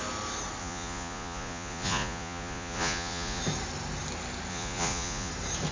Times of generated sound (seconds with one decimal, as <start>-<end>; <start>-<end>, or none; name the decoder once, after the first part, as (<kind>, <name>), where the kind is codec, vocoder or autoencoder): 0.6-3.4 (vocoder, Vocos); 4.5-5.3

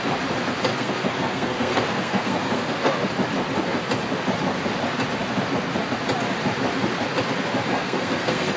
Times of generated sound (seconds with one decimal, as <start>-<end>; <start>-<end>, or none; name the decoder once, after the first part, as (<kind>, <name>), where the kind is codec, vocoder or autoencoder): 0.7-2.9 (codec, SNAC); 7.8-8.6

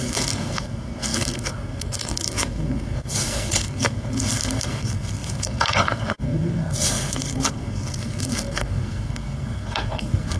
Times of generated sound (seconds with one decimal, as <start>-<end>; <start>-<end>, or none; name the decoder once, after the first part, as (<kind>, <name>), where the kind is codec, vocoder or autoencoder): 0.0-10.4 (codec, SNAC)

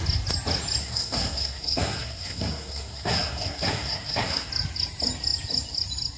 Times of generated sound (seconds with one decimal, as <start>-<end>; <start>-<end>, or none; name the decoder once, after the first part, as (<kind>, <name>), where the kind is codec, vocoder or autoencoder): 0.8-4.5 (codec, SNAC)